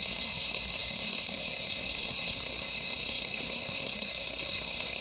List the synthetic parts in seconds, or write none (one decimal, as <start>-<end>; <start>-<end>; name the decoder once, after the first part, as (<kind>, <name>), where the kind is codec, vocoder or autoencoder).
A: 0.0-5.0 (codec, SNAC)